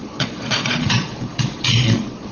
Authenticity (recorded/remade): remade